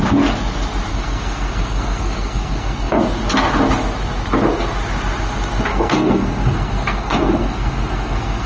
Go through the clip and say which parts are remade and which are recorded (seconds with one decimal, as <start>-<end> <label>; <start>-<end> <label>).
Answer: 0.0-0.9 recorded; 0.9-3.0 remade; 3.0-5.7 recorded; 5.7-8.5 remade